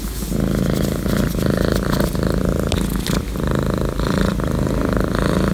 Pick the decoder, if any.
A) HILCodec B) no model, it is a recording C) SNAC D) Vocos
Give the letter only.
B